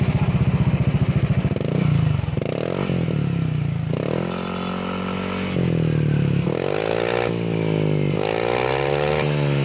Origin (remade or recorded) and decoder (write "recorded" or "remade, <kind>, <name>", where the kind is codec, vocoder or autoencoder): recorded